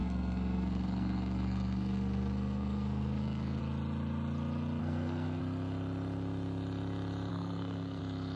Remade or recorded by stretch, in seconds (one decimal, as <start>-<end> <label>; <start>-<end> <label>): 0.0-3.6 remade; 3.6-4.8 recorded; 4.8-5.4 remade; 5.4-7.3 recorded; 7.3-8.0 remade; 8.0-8.4 recorded